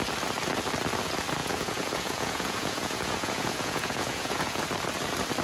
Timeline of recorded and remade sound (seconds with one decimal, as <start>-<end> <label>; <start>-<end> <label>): 0.0-1.4 recorded; 1.4-4.6 remade; 4.6-5.4 recorded